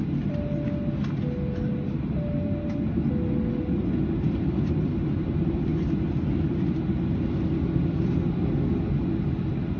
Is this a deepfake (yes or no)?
no